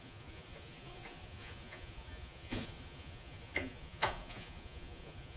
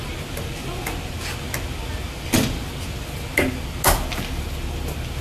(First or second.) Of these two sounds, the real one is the second